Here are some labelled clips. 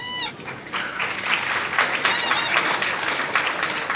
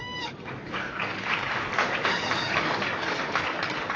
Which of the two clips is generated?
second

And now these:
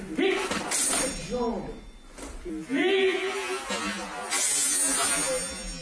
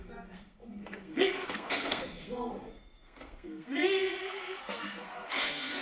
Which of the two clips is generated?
second